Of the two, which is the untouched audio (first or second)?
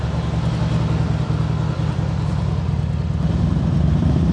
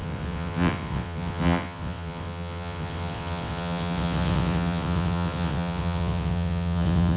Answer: first